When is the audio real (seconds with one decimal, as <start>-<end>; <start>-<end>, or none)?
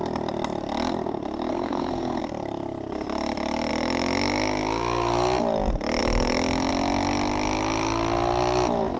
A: 0.0-1.5; 2.2-9.0